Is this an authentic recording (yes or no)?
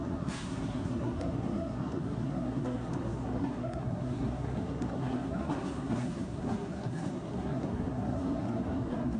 no